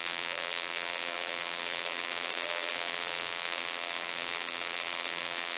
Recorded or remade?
remade